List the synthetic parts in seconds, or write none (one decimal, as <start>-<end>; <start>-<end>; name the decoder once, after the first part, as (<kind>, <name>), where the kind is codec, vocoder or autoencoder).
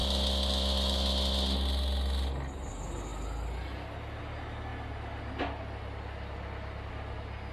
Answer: none